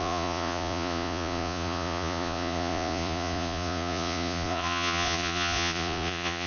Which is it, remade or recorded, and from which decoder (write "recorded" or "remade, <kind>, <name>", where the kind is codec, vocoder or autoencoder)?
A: remade, vocoder, Vocos